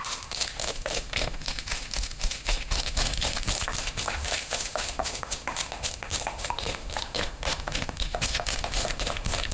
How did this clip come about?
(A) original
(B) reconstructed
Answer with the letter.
B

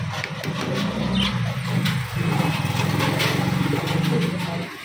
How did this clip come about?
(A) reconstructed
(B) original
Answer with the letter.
B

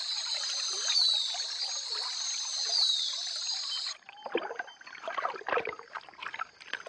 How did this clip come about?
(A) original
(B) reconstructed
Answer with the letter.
A